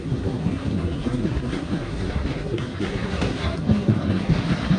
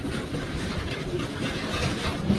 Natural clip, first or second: second